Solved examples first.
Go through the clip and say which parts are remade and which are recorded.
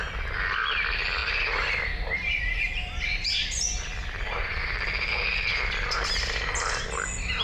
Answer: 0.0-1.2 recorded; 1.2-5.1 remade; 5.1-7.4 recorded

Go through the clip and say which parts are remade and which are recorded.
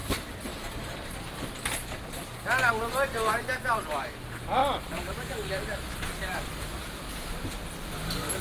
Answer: 0.0-2.0 remade; 2.0-6.1 recorded; 6.1-7.4 remade; 7.4-8.4 recorded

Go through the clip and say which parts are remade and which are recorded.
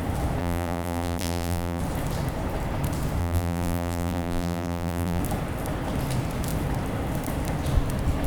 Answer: 0.0-0.4 recorded; 0.4-1.8 remade; 1.8-3.2 recorded; 3.2-5.2 remade; 5.2-8.3 recorded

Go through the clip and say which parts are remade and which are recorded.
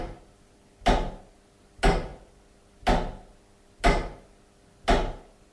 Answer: 0.0-5.5 recorded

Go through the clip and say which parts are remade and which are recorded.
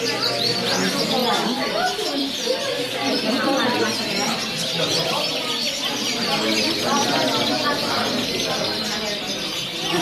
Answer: 0.0-1.2 recorded; 1.2-3.8 remade; 3.8-10.0 recorded